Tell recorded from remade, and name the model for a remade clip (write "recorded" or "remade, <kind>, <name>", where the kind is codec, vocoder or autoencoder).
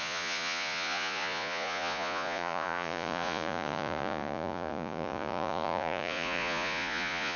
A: remade, vocoder, Vocos